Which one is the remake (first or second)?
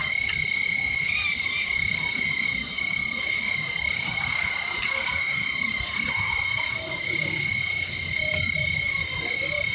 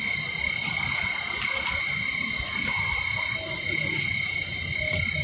first